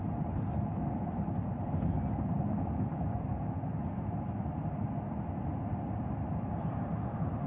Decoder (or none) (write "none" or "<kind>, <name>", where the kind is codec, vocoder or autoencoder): none